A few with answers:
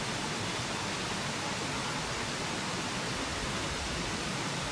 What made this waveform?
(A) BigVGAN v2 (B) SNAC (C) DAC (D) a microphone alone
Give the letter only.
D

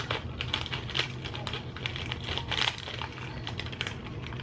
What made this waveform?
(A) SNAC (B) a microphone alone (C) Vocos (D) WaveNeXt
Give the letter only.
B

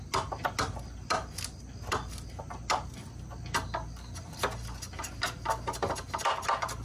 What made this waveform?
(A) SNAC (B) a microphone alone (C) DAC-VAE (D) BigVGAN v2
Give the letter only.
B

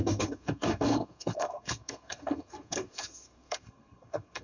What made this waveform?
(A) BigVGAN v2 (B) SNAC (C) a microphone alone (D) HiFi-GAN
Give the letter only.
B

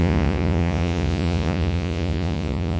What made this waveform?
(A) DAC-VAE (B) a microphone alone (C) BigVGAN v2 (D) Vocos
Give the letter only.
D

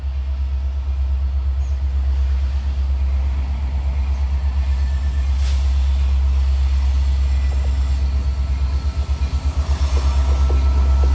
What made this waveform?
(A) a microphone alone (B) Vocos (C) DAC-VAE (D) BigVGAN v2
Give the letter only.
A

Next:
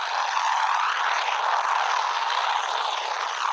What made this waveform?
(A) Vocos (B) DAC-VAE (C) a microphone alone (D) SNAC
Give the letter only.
C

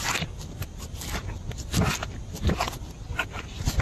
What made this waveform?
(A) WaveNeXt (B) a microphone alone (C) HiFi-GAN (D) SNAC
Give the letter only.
B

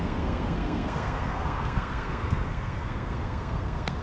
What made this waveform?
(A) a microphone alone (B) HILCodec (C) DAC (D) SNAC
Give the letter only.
D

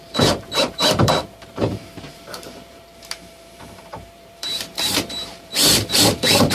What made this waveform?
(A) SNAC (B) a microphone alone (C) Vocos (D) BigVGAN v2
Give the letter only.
D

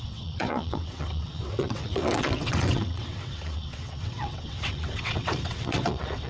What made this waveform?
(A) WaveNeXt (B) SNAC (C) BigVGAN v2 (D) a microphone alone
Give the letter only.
A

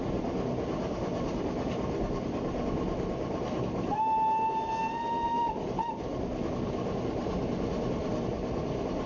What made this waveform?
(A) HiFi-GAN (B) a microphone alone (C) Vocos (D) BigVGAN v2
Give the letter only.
B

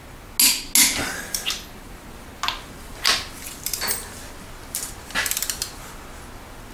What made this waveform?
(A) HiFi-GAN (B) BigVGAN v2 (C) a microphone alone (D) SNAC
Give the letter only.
C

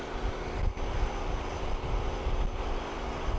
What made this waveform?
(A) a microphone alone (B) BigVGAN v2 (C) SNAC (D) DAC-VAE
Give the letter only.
A